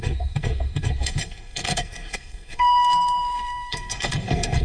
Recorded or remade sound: remade